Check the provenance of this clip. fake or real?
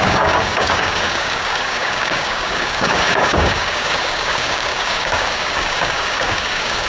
fake